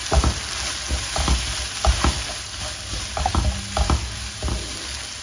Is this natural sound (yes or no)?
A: yes